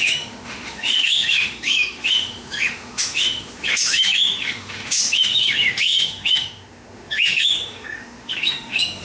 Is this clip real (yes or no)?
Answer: no